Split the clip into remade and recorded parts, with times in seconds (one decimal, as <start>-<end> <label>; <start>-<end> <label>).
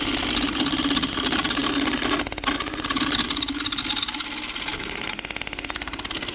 0.0-6.3 recorded